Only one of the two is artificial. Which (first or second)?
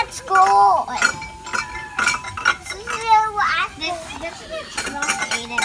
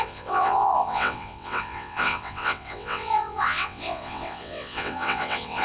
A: second